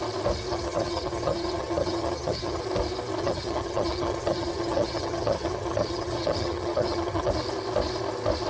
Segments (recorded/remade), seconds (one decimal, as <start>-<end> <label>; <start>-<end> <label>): 0.0-0.5 recorded; 0.5-2.6 remade; 2.6-3.2 recorded; 3.2-7.3 remade; 7.3-8.5 recorded